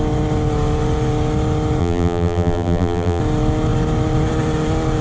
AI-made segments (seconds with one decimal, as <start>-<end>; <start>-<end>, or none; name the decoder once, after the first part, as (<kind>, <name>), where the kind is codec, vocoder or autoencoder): 1.8-3.2 (vocoder, BigVGAN v2)